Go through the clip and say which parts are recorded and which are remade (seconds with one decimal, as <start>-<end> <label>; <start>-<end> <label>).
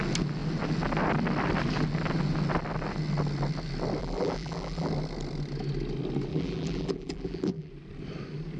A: 0.0-4.0 recorded; 4.0-4.9 remade; 4.9-6.3 recorded; 6.3-7.7 remade; 7.7-8.6 recorded